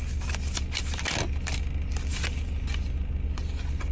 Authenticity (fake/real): real